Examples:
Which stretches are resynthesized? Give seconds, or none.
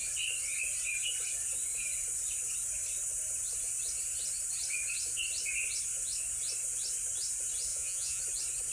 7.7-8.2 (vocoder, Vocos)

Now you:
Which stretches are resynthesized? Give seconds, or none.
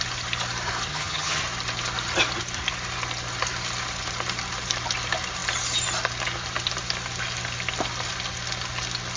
0.9-1.4 (vocoder, HiFi-GAN)